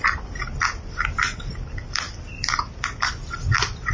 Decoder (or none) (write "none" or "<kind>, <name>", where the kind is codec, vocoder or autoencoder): none